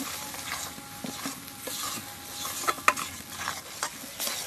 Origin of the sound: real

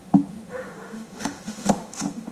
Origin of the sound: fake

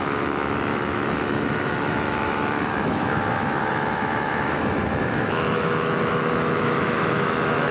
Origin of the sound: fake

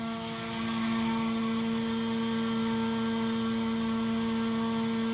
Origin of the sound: real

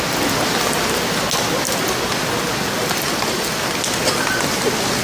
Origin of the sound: real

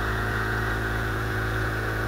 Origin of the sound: fake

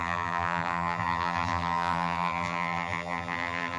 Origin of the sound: fake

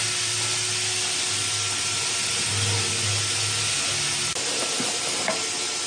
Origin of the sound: real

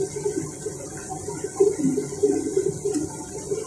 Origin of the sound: real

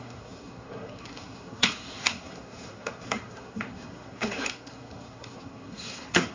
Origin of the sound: fake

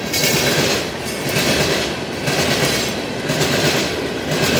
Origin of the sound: real